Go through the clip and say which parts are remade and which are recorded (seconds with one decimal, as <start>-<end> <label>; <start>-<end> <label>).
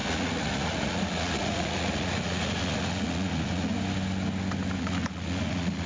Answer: 0.0-3.7 remade; 3.7-4.8 recorded; 4.8-5.9 remade